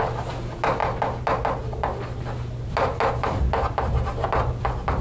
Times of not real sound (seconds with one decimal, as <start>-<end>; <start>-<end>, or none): none